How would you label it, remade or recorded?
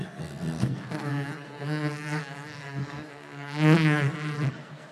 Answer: remade